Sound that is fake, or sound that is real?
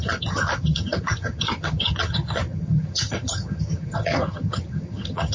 fake